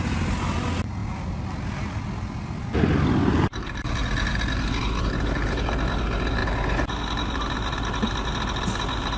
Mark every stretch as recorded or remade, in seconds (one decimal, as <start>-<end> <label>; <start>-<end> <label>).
0.0-9.2 recorded